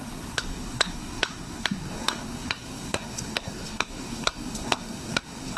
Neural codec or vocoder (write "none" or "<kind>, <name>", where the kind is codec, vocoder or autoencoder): codec, SNAC